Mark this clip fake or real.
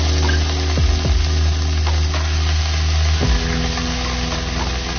real